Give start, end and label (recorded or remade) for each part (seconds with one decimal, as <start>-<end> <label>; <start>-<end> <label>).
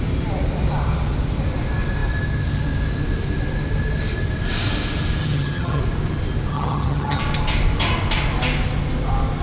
0.0-5.2 recorded; 5.2-5.8 remade; 5.8-6.5 recorded; 6.5-7.2 remade; 7.2-9.4 recorded